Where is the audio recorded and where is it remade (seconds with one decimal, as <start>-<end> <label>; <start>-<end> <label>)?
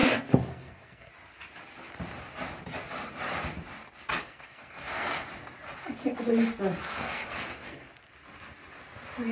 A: 0.0-1.1 remade; 1.1-4.2 recorded; 4.2-5.3 remade; 5.3-6.8 recorded; 6.8-7.9 remade; 7.9-9.3 recorded